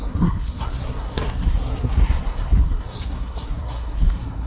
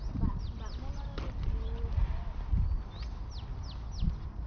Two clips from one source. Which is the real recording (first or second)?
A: second